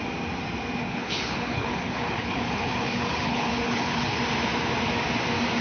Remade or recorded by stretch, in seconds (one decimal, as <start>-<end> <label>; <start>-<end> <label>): 0.0-0.8 recorded; 0.8-4.2 remade; 4.2-5.6 recorded